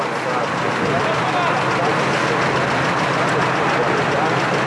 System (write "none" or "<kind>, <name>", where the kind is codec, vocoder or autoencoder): none